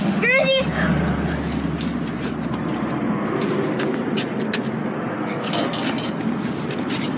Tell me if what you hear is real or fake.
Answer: real